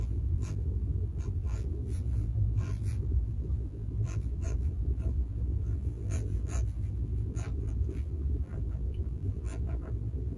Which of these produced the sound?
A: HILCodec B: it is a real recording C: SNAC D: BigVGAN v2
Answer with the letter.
D